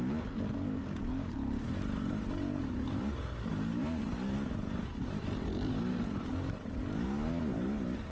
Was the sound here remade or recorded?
recorded